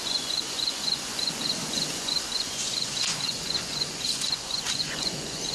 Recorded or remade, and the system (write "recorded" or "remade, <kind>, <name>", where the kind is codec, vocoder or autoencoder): remade, vocoder, Vocos